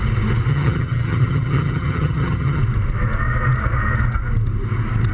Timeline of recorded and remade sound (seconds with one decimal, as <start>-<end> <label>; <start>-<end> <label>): 0.0-0.5 recorded; 0.5-2.6 remade; 2.6-5.1 recorded